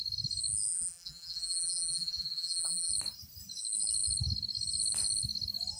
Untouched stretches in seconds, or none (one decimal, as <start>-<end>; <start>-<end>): 0.0-0.7; 2.9-5.8